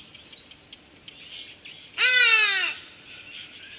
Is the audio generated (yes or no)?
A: no